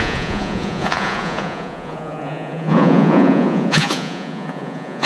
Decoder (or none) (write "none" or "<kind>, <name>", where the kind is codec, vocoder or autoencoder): vocoder, Vocos